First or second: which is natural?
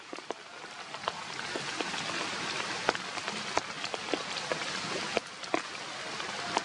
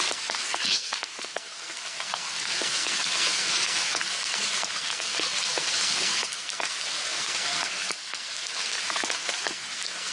first